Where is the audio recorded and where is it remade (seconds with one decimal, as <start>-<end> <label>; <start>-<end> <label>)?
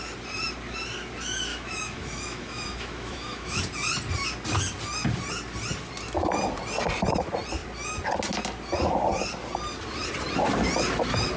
0.0-1.5 recorded; 1.5-3.6 remade; 3.6-11.4 recorded